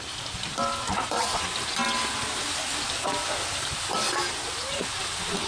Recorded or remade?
recorded